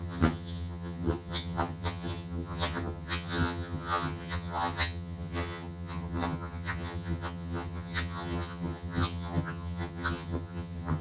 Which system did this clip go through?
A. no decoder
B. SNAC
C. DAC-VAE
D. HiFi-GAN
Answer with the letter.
D